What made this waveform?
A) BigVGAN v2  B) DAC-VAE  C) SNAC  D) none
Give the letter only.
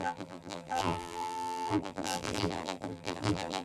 A